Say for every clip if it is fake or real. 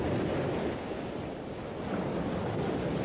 real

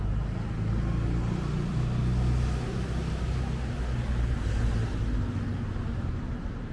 real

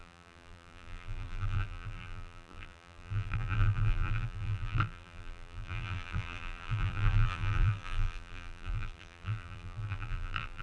fake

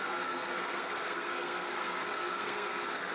fake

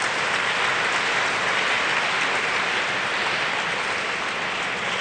real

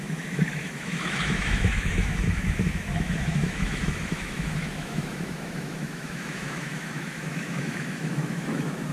fake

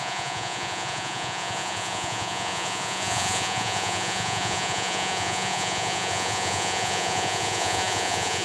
fake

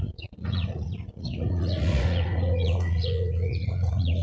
fake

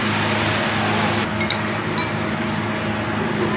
real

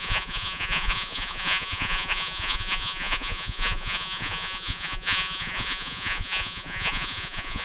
fake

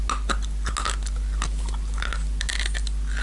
real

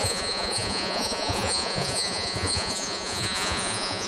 fake